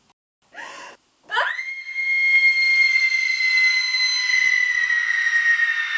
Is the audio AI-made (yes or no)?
no